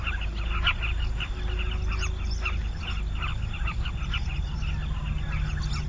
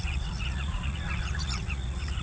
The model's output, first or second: second